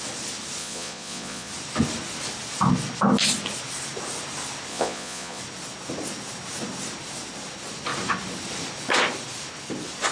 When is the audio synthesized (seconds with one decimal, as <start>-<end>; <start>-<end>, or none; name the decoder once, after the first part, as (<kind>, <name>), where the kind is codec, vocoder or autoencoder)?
0.6-1.5 (vocoder, Vocos); 4.7-5.4